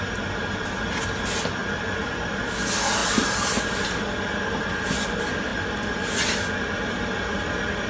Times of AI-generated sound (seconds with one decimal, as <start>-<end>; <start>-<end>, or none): none